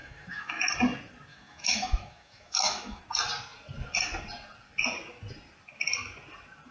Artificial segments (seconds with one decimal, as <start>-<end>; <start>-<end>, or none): 0.0-0.7; 1.3-3.0